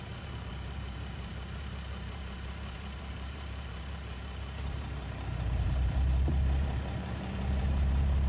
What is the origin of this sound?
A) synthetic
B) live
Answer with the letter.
A